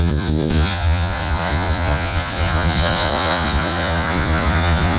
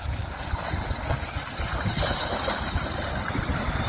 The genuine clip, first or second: second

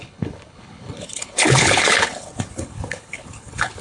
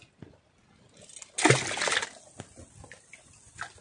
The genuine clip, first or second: second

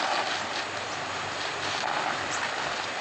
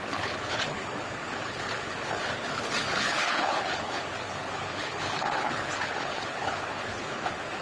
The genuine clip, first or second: first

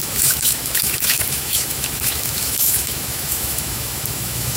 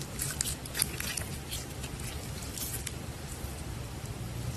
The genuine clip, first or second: second